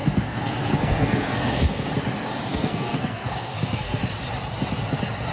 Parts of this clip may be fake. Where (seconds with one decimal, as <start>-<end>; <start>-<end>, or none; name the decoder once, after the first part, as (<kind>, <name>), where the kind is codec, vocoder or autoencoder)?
0.0-1.9 (codec, SNAC); 2.5-4.0